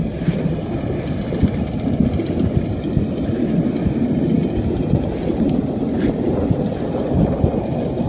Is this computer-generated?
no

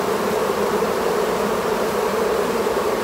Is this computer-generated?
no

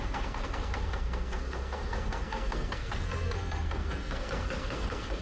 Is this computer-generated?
yes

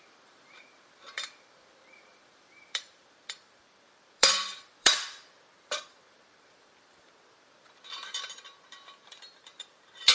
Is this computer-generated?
yes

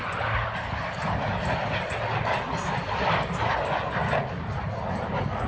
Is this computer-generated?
no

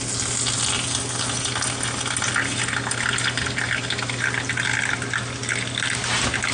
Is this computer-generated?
no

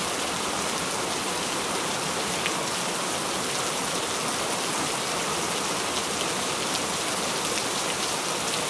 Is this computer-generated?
no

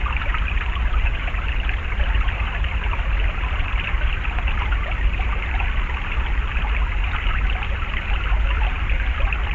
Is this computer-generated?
no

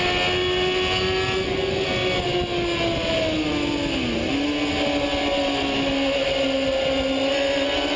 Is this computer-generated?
no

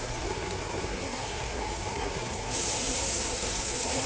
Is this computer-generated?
yes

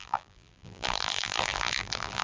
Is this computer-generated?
yes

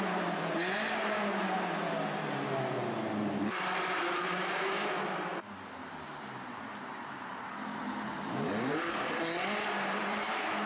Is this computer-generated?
yes